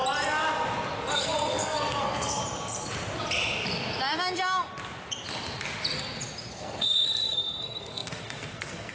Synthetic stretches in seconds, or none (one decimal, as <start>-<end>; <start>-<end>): 1.1-2.4; 6.5-8.9